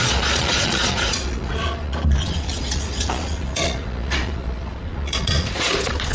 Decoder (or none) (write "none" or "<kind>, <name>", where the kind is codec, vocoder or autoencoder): vocoder, Vocos